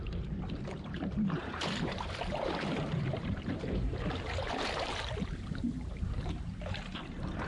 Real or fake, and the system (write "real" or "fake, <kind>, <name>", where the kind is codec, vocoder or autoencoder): fake, vocoder, BigVGAN v2